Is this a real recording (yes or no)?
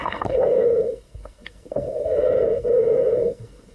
no